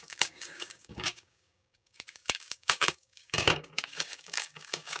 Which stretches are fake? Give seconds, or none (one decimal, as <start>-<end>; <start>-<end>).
0.0-5.0